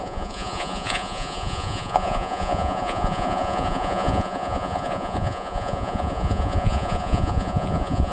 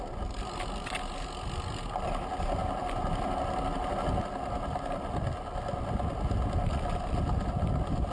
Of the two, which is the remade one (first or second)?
first